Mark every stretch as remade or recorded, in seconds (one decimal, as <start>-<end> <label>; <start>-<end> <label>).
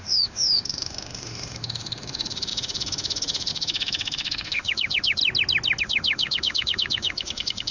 0.0-5.2 remade; 5.2-5.8 recorded; 5.8-7.7 remade